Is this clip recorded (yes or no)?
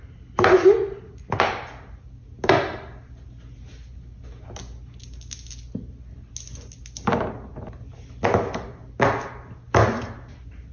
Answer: yes